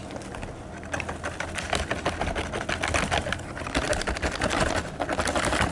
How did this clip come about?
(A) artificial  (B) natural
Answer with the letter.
B